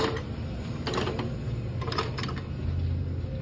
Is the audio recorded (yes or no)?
yes